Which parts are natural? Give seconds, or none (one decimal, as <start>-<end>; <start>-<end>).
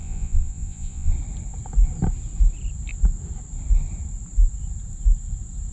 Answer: 1.1-5.7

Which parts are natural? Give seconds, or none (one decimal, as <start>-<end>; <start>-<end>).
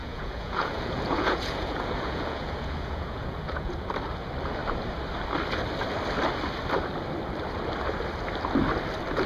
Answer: 3.9-9.3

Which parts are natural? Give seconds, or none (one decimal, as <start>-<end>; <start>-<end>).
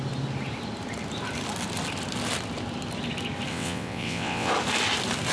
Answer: 0.0-3.5; 4.5-5.3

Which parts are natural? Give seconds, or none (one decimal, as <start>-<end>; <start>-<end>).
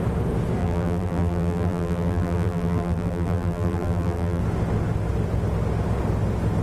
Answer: 0.0-0.6; 4.4-6.6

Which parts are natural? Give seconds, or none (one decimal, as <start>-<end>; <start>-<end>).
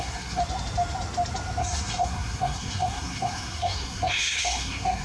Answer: 0.4-1.6